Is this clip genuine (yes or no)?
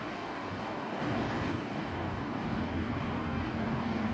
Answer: no